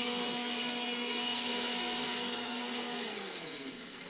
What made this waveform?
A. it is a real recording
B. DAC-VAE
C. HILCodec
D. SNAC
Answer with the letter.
D